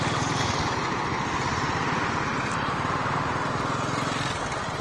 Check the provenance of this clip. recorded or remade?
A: recorded